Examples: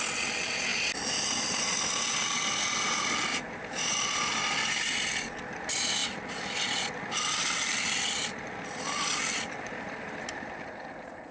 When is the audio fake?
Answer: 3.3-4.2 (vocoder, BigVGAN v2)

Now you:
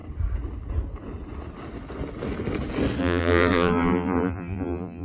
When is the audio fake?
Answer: 3.0-5.0 (vocoder, BigVGAN v2)

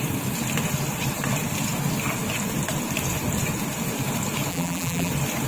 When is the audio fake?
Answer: 4.5-5.1 (vocoder, BigVGAN v2)

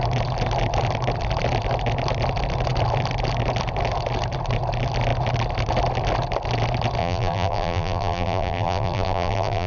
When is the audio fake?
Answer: 7.0-9.7 (vocoder, BigVGAN v2)